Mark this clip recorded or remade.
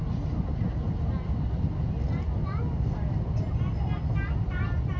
recorded